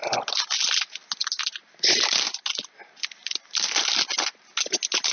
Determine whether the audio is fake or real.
real